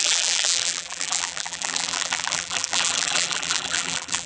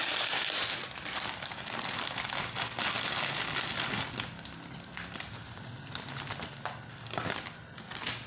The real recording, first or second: second